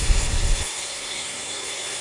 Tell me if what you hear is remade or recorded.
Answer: remade